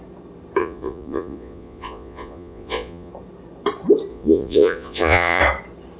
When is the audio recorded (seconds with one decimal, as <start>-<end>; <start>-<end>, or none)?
0.0-0.6; 3.1-4.1; 5.4-6.0